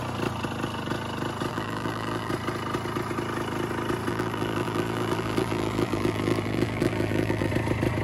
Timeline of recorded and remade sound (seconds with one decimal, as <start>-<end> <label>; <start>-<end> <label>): 0.0-1.5 recorded; 1.5-2.3 remade; 2.3-4.1 recorded; 4.1-7.5 remade; 7.5-8.0 recorded